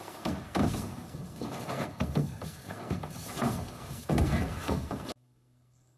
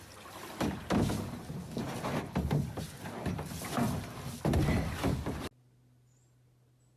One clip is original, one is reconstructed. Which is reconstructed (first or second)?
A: first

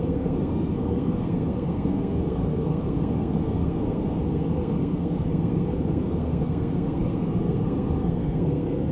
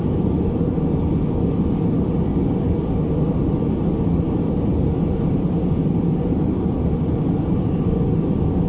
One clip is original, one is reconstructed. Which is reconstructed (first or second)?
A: first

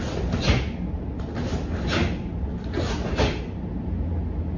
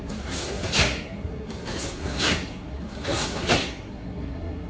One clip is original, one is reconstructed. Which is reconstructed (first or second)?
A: second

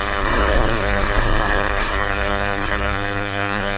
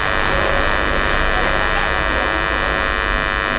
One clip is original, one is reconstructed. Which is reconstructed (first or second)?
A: first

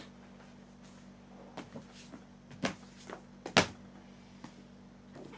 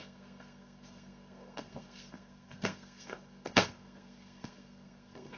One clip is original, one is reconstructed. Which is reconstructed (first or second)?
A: second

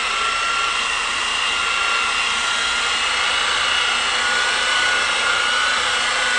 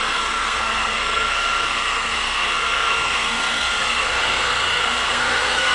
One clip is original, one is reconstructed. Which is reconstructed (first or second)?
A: second